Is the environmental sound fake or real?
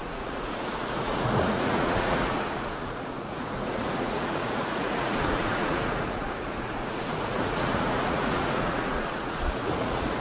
fake